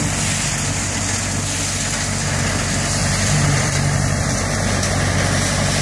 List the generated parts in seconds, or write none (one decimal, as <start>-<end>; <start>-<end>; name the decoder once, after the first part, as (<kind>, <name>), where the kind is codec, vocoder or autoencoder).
3.0-4.4 (vocoder, BigVGAN v2)